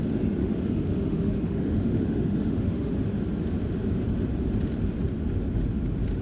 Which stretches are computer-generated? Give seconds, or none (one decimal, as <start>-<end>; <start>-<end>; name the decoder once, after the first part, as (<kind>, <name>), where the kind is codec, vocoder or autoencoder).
0.4-2.9 (autoencoder, DAC-VAE)